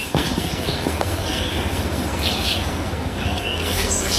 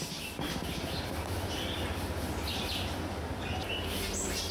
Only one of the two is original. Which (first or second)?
second